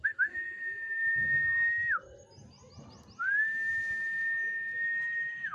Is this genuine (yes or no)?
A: yes